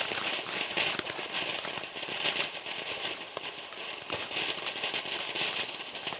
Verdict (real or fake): real